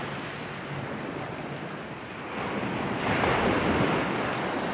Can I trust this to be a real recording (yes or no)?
yes